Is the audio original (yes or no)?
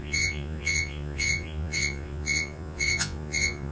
no